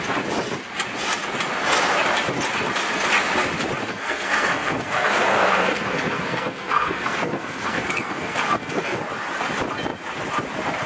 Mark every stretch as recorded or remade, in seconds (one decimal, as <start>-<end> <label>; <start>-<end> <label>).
0.0-3.9 recorded; 3.9-9.0 remade; 9.0-10.9 recorded